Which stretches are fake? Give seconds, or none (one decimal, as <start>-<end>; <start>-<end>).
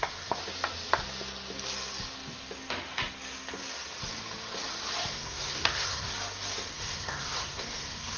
0.0-0.4; 5.1-6.1; 6.7-8.2